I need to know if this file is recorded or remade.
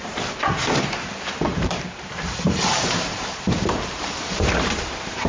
remade